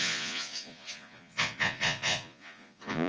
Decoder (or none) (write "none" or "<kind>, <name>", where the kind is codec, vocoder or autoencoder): vocoder, Vocos